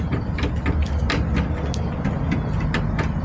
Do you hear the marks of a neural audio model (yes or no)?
no